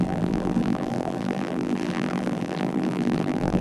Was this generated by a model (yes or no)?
yes